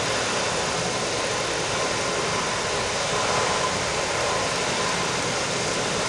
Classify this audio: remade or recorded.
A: recorded